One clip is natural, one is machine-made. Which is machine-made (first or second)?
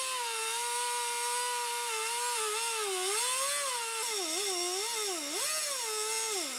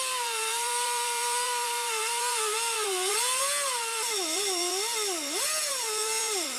second